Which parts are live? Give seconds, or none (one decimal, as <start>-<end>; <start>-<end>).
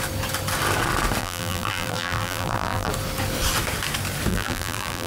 0.0-1.2; 2.9-4.3